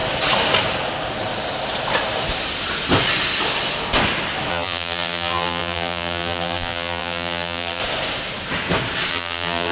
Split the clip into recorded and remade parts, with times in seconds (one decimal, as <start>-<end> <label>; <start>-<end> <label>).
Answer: 0.0-4.5 recorded; 4.5-7.8 remade; 7.8-9.1 recorded; 9.1-9.7 remade